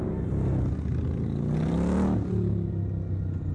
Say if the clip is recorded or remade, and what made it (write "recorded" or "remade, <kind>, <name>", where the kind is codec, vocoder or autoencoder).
recorded